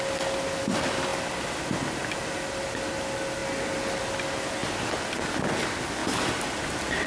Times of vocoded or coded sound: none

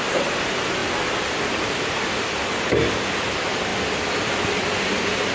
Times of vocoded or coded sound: none

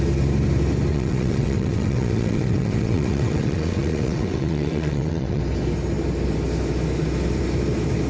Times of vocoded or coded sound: 0.9-5.4

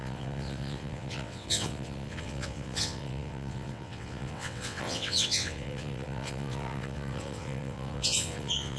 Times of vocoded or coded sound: 0.0-8.8

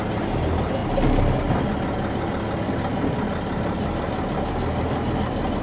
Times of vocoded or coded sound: none

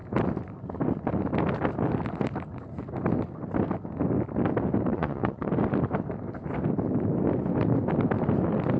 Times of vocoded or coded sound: 4.9-5.5